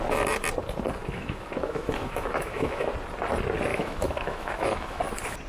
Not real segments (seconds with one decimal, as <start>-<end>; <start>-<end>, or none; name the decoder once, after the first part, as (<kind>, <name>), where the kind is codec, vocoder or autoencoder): 1.0-2.9 (autoencoder, DAC-VAE); 3.7-5.0